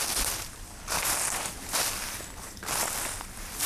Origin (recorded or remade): recorded